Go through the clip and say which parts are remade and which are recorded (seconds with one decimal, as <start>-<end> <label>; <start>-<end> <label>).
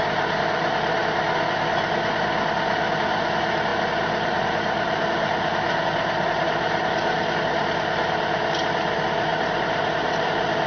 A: 0.0-3.7 recorded; 3.7-7.6 remade; 7.6-9.3 recorded; 9.3-10.7 remade